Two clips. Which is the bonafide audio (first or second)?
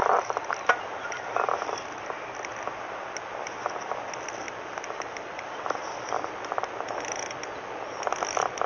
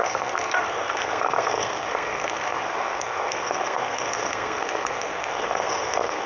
first